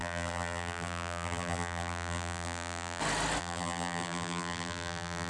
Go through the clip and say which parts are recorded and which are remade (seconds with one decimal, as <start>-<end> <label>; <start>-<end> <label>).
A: 0.0-3.0 remade; 3.0-3.4 recorded; 3.4-5.3 remade